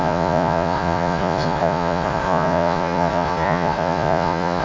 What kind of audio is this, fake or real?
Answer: fake